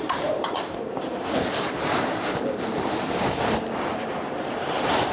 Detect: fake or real fake